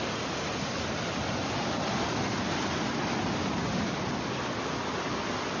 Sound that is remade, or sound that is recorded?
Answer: recorded